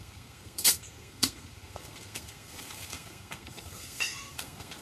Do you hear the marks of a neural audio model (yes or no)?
yes